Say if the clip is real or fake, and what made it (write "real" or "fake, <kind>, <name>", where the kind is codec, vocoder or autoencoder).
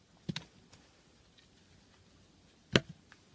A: real